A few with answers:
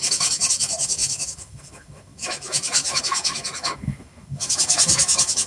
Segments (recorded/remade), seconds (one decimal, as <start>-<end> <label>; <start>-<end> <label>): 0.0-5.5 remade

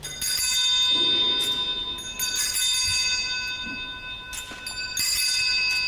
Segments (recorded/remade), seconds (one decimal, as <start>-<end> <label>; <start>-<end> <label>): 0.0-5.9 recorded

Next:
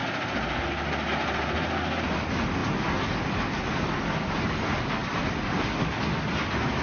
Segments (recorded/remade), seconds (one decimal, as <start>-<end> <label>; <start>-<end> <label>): 0.0-5.0 recorded; 5.0-5.8 remade; 5.8-6.8 recorded

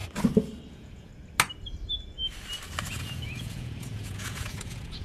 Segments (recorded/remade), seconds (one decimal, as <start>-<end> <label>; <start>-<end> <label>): 0.0-0.7 recorded; 0.7-1.1 remade; 1.1-2.9 recorded; 2.9-5.0 remade